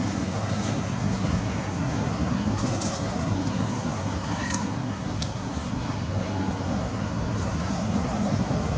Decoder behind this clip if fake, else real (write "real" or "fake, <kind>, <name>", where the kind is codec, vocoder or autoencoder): fake, codec, SNAC